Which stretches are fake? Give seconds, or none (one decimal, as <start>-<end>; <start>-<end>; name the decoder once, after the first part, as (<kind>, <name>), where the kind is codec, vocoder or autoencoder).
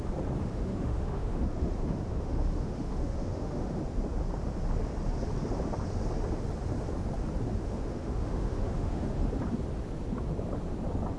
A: 0.4-3.8 (autoencoder, DAC-VAE); 7.6-9.3